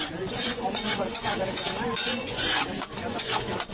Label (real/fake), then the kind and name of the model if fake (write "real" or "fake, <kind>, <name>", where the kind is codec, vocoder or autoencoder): fake, vocoder, Vocos